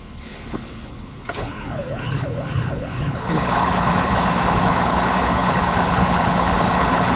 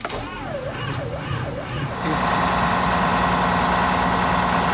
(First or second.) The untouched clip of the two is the second